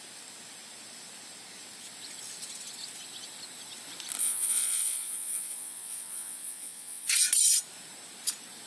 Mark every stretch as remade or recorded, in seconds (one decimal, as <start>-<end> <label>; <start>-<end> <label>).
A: 0.0-4.2 recorded; 4.2-7.1 remade; 7.1-8.7 recorded